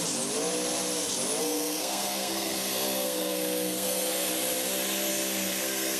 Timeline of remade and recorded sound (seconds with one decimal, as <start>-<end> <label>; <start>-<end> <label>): 0.0-1.4 recorded; 1.4-4.3 remade; 4.3-5.1 recorded; 5.1-6.0 remade